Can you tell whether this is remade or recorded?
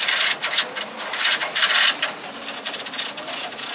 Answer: recorded